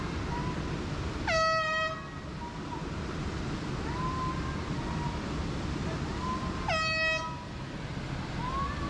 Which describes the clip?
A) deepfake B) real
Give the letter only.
B